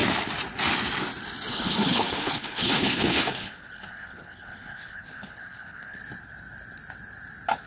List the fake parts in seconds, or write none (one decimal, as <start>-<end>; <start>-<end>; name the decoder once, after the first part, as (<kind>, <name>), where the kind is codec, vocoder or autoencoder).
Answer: 1.5-6.0 (codec, HILCodec)